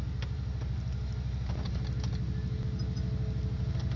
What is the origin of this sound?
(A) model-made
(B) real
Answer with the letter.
B